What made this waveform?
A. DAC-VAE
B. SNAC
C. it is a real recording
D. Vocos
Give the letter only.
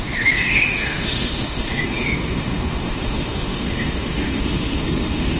A